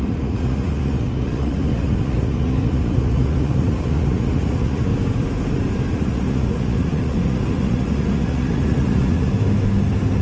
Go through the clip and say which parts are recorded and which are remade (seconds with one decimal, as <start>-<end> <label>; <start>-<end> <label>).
0.0-4.9 remade; 4.9-5.9 recorded; 5.9-9.3 remade; 9.3-10.2 recorded